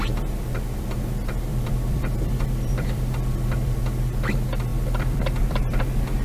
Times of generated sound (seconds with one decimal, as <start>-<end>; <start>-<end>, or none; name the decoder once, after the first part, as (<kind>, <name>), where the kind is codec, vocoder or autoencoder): 1.5-3.8 (vocoder, BigVGAN v2); 4.7-5.8